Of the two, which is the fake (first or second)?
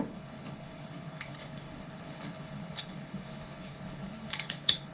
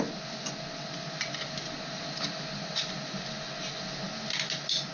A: first